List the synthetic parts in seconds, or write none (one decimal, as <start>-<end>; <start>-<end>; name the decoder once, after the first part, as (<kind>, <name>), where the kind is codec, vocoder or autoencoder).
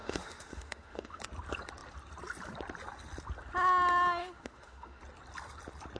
0.0-1.2 (autoencoder, DAC-VAE); 4.2-5.0